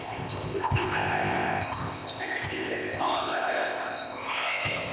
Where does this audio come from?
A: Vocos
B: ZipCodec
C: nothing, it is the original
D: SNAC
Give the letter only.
B